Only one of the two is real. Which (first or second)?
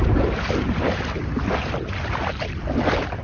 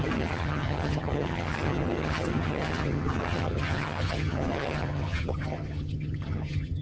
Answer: first